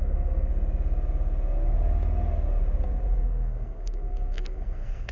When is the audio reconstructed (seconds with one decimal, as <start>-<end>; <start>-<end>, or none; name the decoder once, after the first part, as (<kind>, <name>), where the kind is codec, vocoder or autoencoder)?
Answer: 0.0-0.5 (codec, SNAC); 3.2-5.1